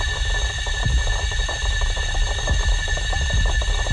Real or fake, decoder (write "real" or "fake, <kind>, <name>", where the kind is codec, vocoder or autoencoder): real